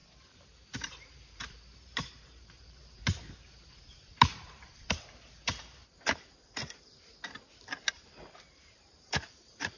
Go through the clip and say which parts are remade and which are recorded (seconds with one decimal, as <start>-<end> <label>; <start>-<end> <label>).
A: 0.0-5.8 remade; 5.8-8.5 recorded; 8.5-9.8 remade

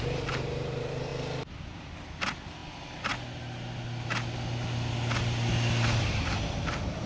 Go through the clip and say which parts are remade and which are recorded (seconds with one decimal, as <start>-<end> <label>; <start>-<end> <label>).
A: 0.0-1.1 remade; 1.1-1.9 recorded; 1.9-2.6 remade; 2.6-6.0 recorded; 6.0-7.1 remade

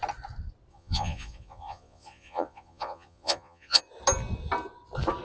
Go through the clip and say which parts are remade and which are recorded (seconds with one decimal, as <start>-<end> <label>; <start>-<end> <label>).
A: 0.0-0.7 recorded; 0.7-3.8 remade; 3.8-5.2 recorded

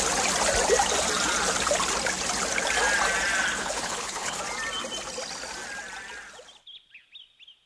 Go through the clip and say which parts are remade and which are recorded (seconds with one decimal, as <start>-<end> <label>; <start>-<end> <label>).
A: 0.0-3.6 recorded; 3.6-4.4 remade; 4.4-7.7 recorded

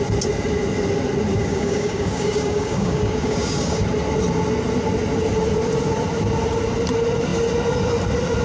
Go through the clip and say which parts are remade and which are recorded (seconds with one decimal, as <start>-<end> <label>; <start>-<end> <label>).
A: 0.0-1.3 recorded; 1.3-3.8 remade; 3.8-8.4 recorded